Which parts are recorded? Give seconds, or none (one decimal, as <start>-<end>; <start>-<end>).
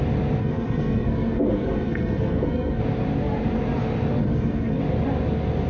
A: 0.0-0.4; 2.8-4.2; 4.8-5.7